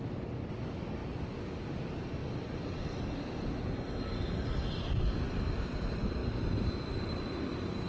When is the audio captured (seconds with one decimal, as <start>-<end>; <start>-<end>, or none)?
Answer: 0.0-7.9